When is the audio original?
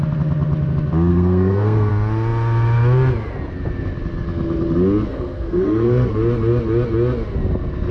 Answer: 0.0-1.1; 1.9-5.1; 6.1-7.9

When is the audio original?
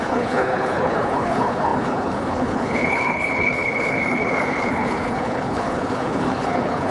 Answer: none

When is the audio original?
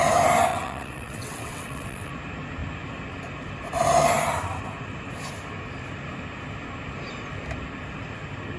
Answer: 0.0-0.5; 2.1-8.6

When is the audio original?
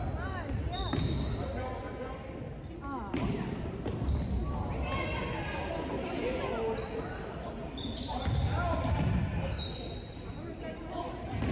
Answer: 0.0-11.5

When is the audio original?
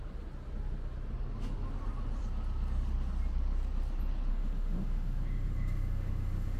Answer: 0.0-4.3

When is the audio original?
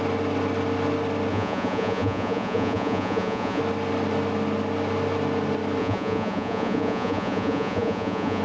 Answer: 0.0-1.3; 3.6-5.8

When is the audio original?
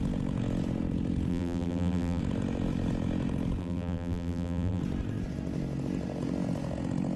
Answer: 0.0-1.3; 2.2-3.6; 4.8-7.2